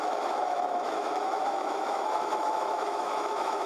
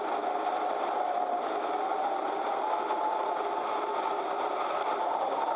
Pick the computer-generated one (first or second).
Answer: first